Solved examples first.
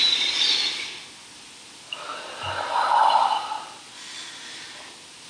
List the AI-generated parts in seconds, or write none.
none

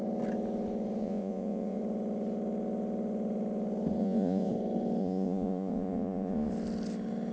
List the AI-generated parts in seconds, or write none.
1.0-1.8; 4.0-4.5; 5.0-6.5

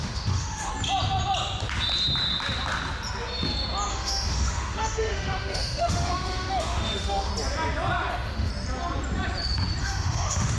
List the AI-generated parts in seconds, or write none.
0.0-0.7; 3.9-7.3; 8.1-8.5; 9.8-10.6

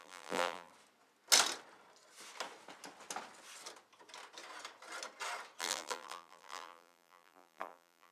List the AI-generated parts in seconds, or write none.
0.0-0.7; 5.6-8.1

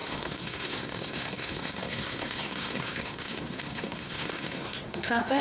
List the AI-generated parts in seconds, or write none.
0.0-5.4

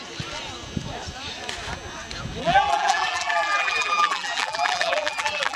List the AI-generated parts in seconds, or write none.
2.4-5.6

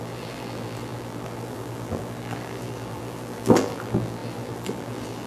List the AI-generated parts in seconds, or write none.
0.0-5.3